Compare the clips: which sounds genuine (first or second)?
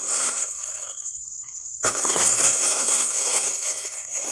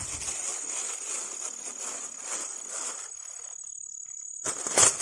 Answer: second